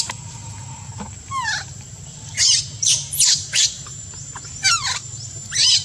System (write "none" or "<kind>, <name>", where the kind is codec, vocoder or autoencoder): vocoder, BigVGAN v2